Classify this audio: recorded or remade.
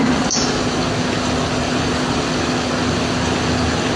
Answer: recorded